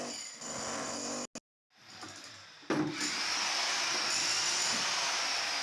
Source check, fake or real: real